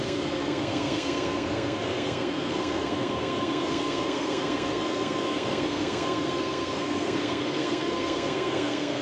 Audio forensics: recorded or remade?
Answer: remade